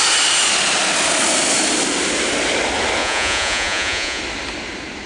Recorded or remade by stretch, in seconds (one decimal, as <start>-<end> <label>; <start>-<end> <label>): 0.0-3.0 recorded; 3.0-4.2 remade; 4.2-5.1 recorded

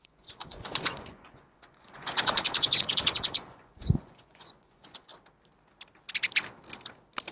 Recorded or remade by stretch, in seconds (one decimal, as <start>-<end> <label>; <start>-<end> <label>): 0.0-5.1 remade; 5.1-7.3 recorded

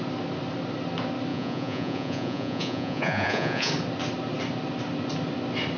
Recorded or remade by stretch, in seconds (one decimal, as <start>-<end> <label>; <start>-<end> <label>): 0.0-1.3 recorded; 1.3-3.7 remade; 3.7-5.8 recorded

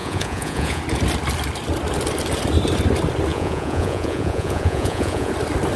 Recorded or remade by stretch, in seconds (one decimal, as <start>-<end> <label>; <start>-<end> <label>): 0.0-0.8 remade; 0.8-3.3 recorded; 3.3-5.3 remade; 5.3-5.8 recorded